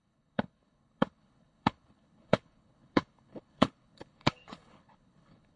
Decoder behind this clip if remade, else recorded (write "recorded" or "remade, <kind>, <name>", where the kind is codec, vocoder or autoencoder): remade, codec, HILCodec